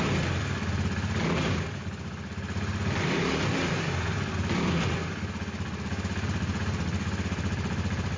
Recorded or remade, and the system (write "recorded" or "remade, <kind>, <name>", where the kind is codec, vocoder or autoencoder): recorded